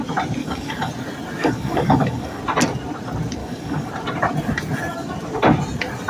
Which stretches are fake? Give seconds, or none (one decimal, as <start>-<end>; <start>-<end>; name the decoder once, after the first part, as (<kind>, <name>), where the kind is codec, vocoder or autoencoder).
0.4-0.9 (codec, DAC); 1.4-2.4; 3.4-3.9